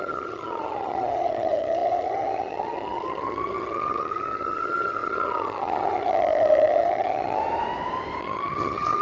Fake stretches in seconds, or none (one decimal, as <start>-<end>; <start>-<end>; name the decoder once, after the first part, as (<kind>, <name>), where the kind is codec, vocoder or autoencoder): 0.0-7.4 (vocoder, HiFi-GAN); 8.2-9.0